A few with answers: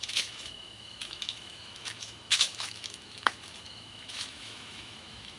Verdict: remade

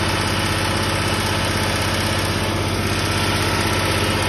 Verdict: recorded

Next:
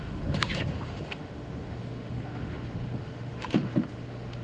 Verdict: remade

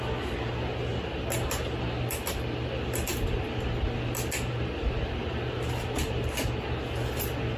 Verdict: recorded